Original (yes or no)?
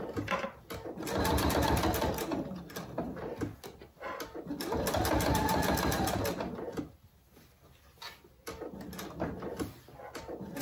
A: yes